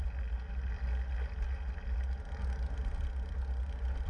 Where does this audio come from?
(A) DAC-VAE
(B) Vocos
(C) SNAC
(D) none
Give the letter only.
D